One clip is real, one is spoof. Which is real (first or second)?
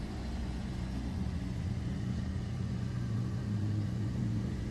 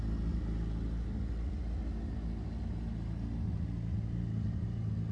second